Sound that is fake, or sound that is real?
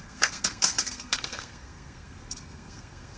fake